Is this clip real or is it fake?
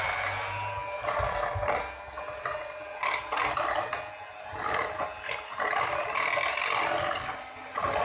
real